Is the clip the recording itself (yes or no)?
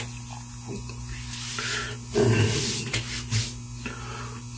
yes